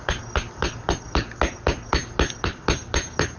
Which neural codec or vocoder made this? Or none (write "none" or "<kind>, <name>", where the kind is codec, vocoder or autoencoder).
none